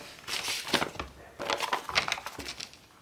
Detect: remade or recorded recorded